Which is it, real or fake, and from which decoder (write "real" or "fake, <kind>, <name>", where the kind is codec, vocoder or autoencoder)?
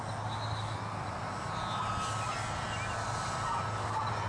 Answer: real